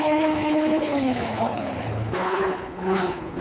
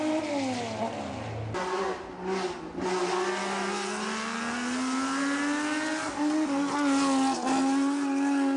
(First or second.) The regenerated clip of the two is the first